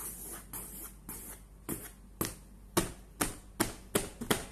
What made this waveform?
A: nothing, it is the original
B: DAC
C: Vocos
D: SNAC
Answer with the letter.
A